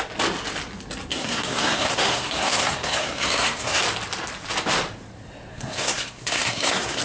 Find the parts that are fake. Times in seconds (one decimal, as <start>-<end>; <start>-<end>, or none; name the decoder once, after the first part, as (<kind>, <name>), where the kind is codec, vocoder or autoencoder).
1.1-3.8 (codec, SNAC); 5.5-7.0